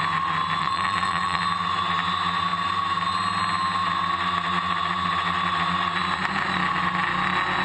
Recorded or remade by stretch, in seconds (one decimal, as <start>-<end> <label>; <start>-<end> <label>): 0.0-0.6 recorded; 0.6-1.4 remade; 1.4-7.6 recorded